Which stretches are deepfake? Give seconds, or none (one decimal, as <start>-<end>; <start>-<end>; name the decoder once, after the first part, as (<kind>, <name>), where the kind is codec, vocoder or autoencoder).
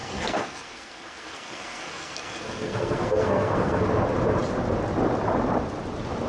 0.0-3.8 (codec, SNAC)